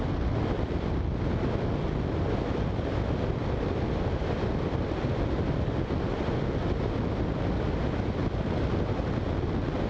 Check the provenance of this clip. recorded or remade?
recorded